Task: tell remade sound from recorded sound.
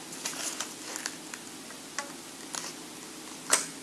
recorded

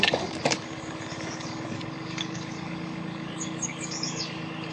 remade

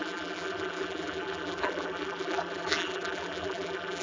remade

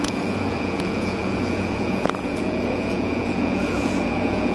remade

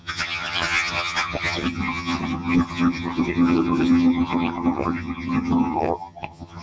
remade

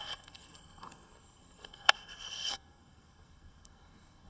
remade